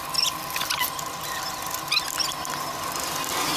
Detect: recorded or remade recorded